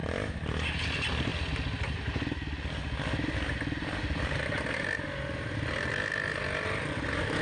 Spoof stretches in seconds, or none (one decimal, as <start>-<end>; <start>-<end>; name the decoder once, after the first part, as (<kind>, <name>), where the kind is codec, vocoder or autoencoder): none